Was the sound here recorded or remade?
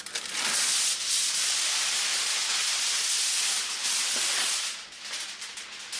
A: recorded